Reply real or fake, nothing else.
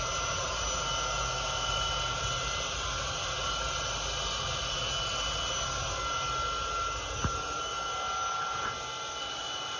real